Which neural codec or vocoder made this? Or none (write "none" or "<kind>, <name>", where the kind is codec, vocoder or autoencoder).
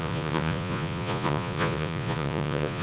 vocoder, Vocos